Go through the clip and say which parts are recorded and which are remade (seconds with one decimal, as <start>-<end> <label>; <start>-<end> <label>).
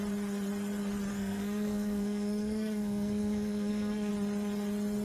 0.0-1.1 recorded; 1.1-4.1 remade; 4.1-5.0 recorded